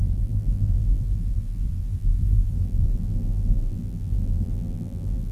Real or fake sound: fake